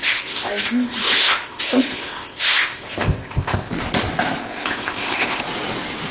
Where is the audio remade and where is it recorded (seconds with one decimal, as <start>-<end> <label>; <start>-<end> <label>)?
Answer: 0.0-3.7 remade; 3.7-4.4 recorded; 4.4-5.4 remade; 5.4-6.1 recorded